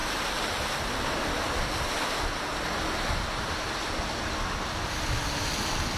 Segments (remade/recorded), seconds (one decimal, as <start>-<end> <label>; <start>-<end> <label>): 0.0-6.0 recorded